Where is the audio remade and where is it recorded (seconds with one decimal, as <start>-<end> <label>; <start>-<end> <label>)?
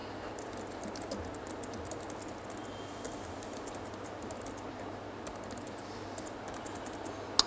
0.0-7.5 recorded